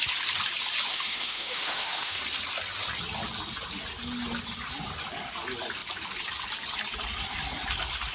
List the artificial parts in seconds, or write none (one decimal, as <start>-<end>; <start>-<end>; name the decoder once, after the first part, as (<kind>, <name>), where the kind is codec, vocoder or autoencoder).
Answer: 0.9-2.2 (autoencoder, DAC-VAE)